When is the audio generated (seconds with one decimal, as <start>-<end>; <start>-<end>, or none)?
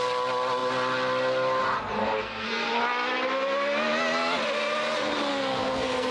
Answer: 2.0-2.8; 5.3-6.1